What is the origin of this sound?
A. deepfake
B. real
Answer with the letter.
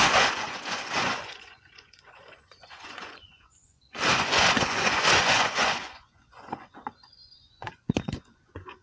A